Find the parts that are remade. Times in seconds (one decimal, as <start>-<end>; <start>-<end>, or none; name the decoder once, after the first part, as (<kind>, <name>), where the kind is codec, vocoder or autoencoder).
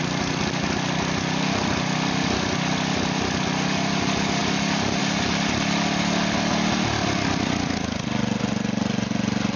none